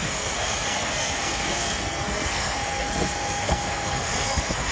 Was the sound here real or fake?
fake